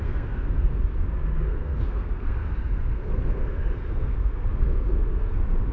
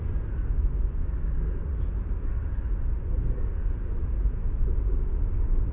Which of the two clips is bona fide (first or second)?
second